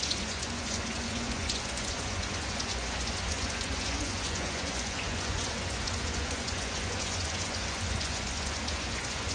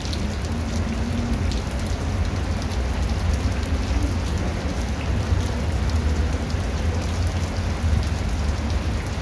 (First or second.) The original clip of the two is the second